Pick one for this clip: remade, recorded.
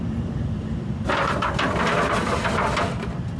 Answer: recorded